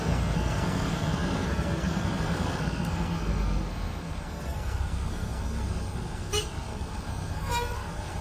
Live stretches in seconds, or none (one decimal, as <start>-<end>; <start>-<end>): none